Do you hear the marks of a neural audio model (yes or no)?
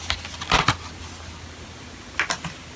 no